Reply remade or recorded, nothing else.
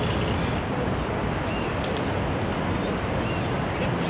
recorded